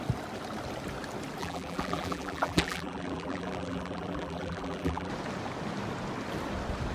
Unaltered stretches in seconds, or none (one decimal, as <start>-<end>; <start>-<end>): 0.0-1.4; 5.1-6.9